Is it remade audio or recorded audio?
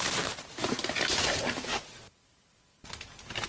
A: remade